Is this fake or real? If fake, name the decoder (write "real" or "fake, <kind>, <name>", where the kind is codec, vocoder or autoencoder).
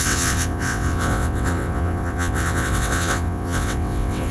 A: fake, vocoder, WaveNeXt